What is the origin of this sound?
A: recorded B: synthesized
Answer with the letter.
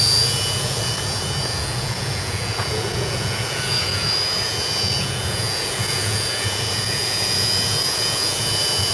B